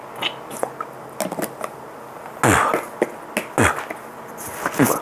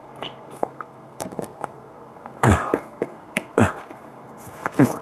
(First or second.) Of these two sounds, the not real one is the second